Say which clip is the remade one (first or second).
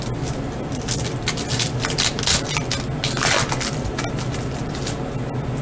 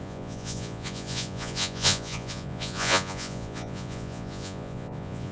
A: second